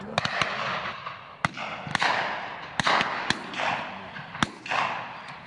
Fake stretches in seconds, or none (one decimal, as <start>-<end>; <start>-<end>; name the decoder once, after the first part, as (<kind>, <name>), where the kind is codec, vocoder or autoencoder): none